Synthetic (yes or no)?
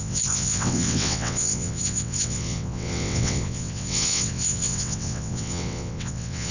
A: yes